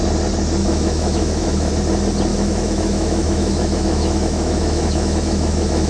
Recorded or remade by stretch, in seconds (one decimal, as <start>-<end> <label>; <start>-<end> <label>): 0.0-0.6 recorded; 0.6-1.7 remade; 1.7-2.3 recorded; 2.3-5.9 remade